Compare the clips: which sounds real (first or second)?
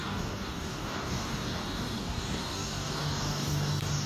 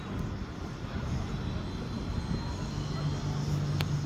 second